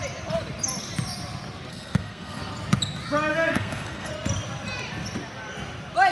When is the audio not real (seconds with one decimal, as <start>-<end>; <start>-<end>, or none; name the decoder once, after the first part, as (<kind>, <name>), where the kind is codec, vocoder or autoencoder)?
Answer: 1.7-2.4 (codec, SNAC); 3.3-4.1